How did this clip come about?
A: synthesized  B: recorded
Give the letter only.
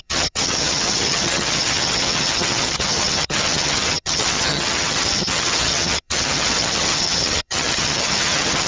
A